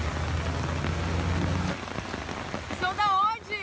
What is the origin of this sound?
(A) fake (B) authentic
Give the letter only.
B